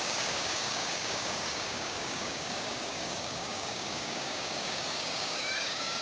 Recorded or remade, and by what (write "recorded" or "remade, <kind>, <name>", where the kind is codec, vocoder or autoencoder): remade, codec, DAC